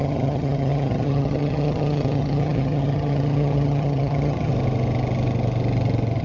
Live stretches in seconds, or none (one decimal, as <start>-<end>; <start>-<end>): 4.5-6.2